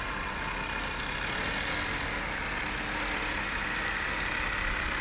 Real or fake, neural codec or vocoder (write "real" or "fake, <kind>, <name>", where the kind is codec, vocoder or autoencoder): real